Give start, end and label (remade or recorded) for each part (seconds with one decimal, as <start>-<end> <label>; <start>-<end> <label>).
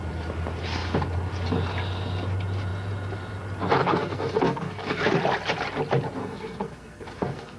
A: 0.0-3.8 recorded; 3.8-5.1 remade; 5.1-6.2 recorded; 6.2-7.6 remade